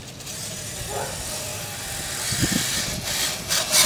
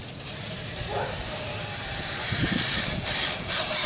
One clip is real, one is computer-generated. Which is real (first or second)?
first